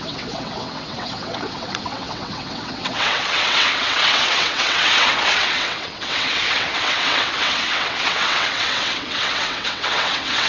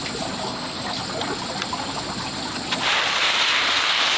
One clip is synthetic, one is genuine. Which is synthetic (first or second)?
first